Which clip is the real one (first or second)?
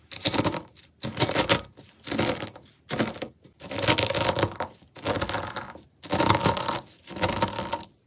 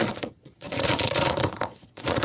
first